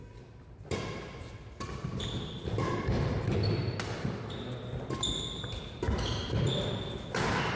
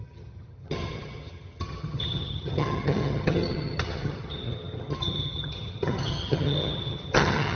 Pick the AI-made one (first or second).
second